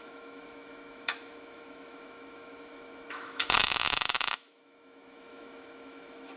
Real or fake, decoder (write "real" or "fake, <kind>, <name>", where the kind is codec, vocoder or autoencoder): fake, autoencoder, DAC-VAE